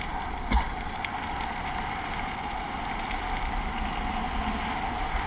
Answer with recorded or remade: recorded